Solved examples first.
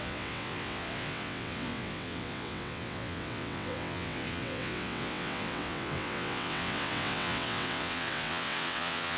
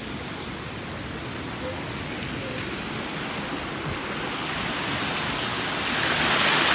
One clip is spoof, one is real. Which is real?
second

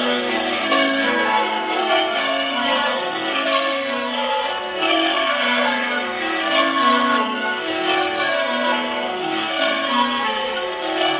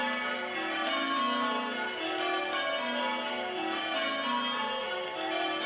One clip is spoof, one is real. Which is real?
second